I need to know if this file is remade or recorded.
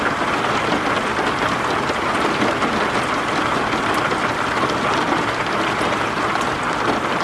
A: recorded